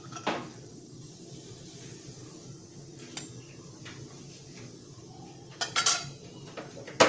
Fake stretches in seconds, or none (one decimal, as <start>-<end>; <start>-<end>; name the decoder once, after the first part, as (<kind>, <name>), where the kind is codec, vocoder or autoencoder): 0.5-1.2 (vocoder, WaveNeXt)